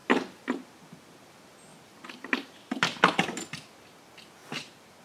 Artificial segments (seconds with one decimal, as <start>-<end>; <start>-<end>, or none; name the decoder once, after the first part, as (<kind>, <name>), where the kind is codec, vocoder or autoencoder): 1.7-3.8 (vocoder, BigVGAN v2); 4.4-5.0